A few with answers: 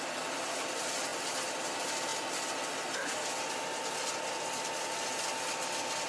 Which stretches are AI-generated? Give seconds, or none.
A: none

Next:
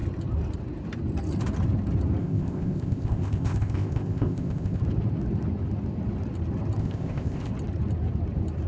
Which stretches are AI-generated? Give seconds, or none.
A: 2.2-4.8 (codec, ZipCodec); 6.8-7.5

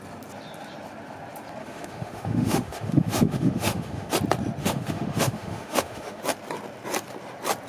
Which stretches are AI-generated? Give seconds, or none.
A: 1.6-4.1 (autoencoder, DAC-VAE); 4.6-6.2

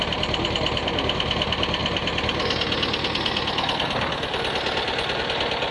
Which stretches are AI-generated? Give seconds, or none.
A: none

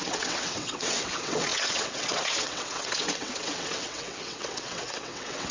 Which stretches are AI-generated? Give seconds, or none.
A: 0.0-5.5 (vocoder, WaveNeXt)

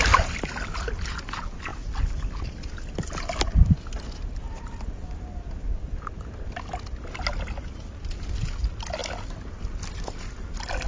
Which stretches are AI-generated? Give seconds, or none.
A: none